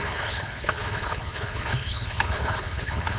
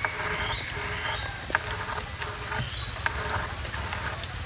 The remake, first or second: first